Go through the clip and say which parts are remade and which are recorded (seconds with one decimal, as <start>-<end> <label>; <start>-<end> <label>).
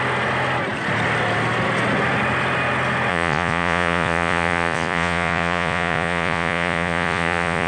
0.0-3.1 recorded; 3.1-7.7 remade